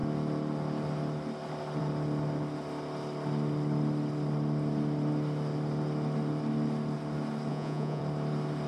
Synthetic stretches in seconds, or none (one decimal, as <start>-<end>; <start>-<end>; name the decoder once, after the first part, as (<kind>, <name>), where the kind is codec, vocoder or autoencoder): 7.5-8.0 (vocoder, Vocos)